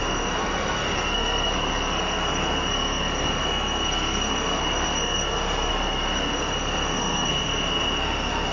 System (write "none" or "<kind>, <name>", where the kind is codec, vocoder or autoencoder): codec, SNAC